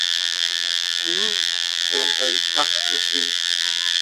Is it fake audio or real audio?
fake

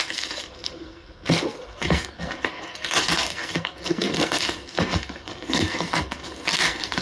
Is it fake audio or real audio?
fake